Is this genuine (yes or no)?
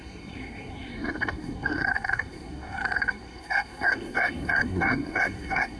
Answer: no